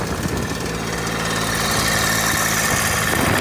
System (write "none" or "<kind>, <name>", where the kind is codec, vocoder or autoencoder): none